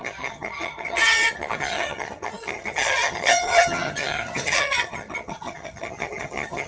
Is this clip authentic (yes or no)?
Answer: no